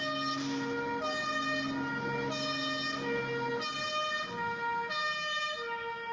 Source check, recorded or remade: recorded